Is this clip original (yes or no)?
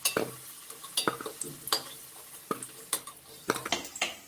yes